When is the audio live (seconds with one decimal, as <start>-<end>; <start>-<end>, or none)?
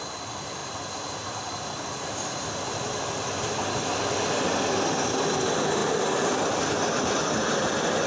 0.0-8.1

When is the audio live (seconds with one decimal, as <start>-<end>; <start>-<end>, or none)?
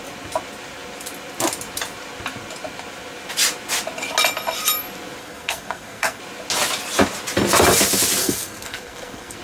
0.0-5.2; 6.2-8.2